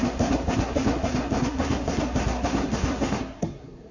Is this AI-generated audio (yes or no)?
yes